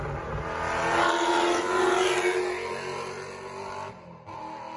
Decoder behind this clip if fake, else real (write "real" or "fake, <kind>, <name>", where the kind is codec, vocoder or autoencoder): real